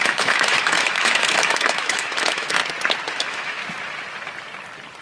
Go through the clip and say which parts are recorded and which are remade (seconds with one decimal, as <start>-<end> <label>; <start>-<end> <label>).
0.0-2.6 remade; 2.6-3.1 recorded; 3.1-3.6 remade; 3.6-5.0 recorded